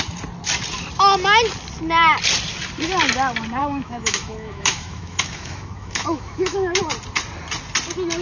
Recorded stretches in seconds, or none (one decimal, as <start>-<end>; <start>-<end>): 0.0-3.6; 6.8-8.2